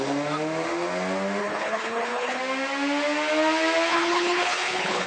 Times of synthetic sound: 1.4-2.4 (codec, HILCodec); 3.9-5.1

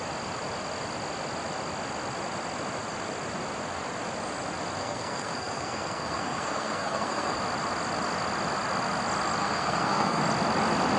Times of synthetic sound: 4.8-7.4 (codec, SNAC); 9.4-10.2

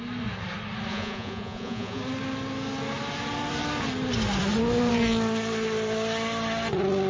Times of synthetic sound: 0.9-2.0 (vocoder, Vocos)

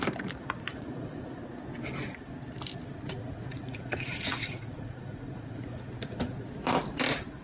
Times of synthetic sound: 0.7-1.4 (vocoder, Vocos); 3.2-5.8

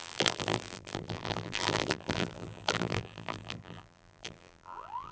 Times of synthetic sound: 0.0-5.1 (vocoder, BigVGAN v2)

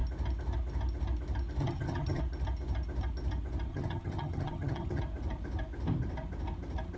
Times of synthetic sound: 1.6-2.2 (vocoder, HiFi-GAN); 3.7-5.0

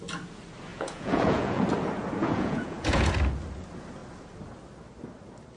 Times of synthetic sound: 0.7-1.6 (vocoder, Vocos); 2.2-3.1